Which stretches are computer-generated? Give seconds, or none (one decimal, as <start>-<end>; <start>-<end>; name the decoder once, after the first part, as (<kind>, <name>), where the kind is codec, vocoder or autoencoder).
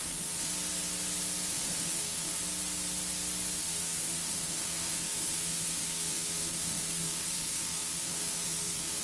0.0-0.5 (codec, SNAC); 1.5-2.4; 3.6-9.0